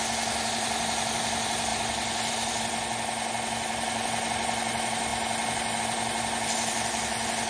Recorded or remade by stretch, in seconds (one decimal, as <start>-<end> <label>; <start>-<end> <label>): 0.0-7.5 recorded